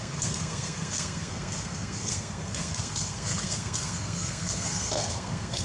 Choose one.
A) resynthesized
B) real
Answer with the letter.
A